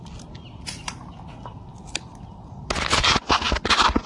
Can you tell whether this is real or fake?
real